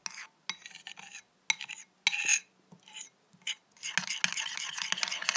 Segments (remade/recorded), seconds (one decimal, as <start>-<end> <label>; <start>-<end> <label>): 0.0-5.4 recorded